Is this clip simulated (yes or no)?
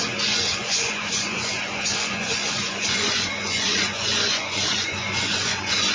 yes